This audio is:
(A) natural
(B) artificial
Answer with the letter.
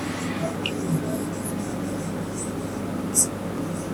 A